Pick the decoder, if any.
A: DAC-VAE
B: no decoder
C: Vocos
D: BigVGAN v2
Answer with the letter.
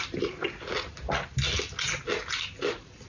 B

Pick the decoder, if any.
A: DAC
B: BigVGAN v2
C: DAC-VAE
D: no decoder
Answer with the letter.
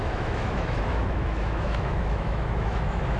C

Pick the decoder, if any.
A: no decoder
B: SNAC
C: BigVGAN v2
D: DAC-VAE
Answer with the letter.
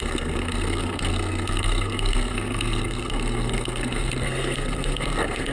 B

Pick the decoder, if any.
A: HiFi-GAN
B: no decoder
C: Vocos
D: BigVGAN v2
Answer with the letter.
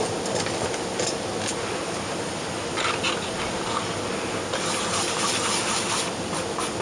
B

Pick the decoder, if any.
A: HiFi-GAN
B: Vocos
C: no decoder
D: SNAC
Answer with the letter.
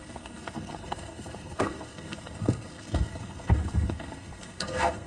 D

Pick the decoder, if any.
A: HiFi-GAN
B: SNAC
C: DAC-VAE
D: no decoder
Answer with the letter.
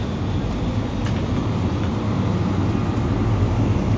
D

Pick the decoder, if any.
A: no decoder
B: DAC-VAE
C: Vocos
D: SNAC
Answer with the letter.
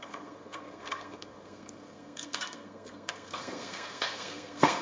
D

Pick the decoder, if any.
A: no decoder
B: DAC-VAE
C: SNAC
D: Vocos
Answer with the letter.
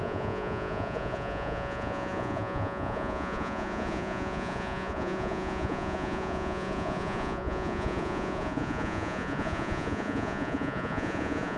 D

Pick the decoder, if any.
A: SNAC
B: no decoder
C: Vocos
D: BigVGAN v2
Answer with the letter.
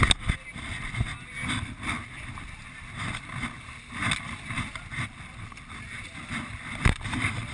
B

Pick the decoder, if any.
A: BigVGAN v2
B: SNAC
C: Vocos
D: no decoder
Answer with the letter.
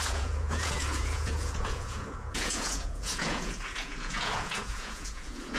C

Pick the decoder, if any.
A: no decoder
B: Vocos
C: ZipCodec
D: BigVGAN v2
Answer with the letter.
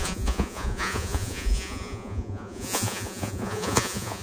B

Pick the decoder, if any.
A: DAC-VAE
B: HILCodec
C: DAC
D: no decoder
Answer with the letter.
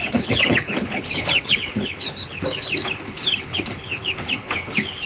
B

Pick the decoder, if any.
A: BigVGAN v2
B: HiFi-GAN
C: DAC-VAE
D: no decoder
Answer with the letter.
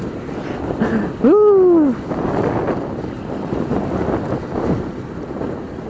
D